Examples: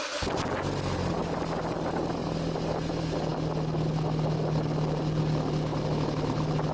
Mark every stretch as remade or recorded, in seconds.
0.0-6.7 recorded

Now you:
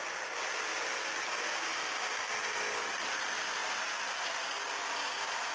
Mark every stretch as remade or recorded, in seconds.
0.0-3.6 recorded; 3.6-4.9 remade; 4.9-5.5 recorded

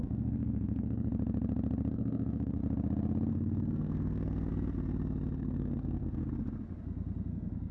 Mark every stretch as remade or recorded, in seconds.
0.0-1.1 remade; 1.1-1.9 recorded; 1.9-2.6 remade; 2.6-3.3 recorded; 3.3-4.5 remade; 4.5-5.4 recorded; 5.4-6.2 remade; 6.2-7.3 recorded; 7.3-7.7 remade

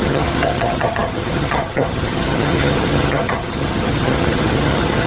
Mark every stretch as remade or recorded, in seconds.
0.0-5.1 remade

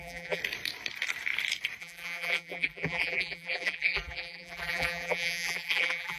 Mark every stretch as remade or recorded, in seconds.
0.0-0.4 remade; 0.4-1.8 recorded; 1.8-6.2 remade